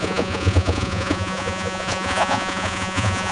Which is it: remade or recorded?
remade